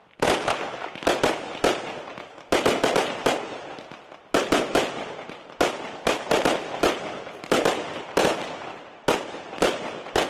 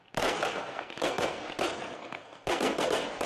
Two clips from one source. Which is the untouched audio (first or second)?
first